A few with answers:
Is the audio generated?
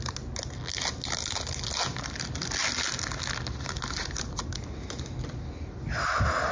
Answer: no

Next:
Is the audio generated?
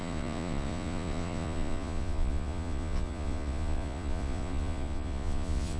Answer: yes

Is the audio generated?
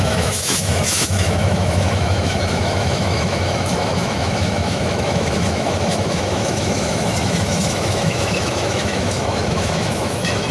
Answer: yes